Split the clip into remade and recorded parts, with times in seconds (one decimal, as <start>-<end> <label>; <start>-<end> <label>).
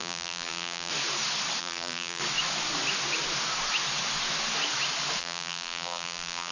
0.0-0.9 remade; 0.9-1.6 recorded; 1.6-2.2 remade; 2.2-5.2 recorded; 5.2-6.5 remade